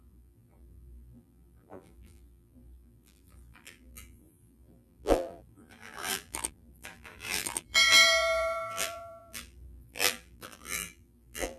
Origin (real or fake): fake